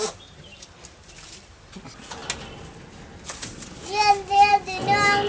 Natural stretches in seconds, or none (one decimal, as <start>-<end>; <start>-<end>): 0.0-5.3